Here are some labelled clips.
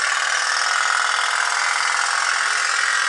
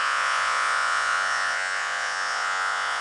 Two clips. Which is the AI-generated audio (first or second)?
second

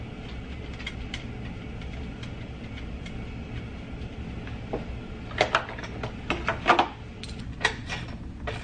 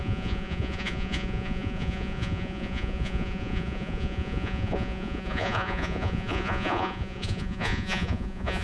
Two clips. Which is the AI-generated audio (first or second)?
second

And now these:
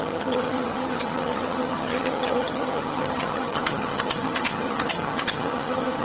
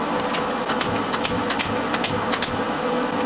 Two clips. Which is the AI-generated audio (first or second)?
first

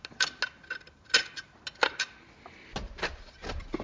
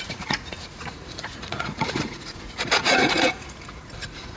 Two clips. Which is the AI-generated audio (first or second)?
second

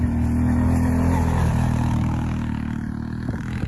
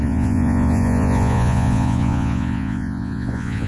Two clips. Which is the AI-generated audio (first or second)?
second